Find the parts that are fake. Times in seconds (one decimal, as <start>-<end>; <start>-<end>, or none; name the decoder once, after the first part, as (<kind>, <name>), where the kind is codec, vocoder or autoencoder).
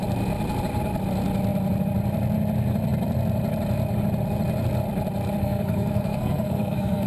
5.4-7.1 (codec, SNAC)